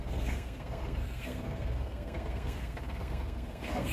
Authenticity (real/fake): fake